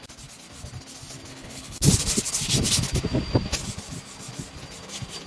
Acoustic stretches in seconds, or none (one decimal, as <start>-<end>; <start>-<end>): 0.0-1.3; 1.9-5.3